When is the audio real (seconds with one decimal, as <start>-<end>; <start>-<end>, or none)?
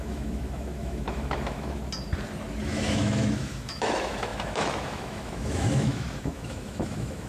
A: 1.8-2.6